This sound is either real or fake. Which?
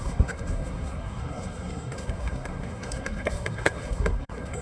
fake